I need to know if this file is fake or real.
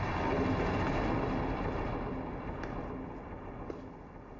real